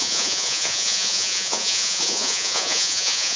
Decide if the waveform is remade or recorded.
remade